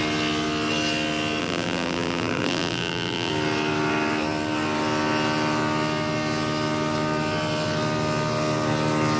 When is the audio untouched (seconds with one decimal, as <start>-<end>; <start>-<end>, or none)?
0.0-1.4; 3.3-9.2